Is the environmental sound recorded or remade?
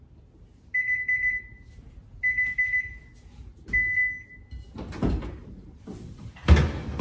recorded